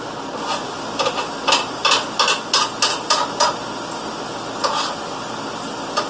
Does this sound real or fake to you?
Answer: real